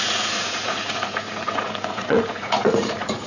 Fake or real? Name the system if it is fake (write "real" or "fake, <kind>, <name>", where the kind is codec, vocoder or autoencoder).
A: fake, vocoder, Vocos